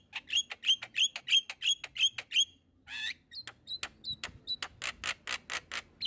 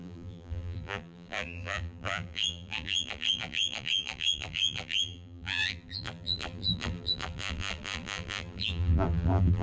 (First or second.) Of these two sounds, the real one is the first